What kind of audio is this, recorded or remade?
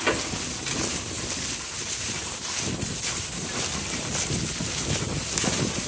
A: recorded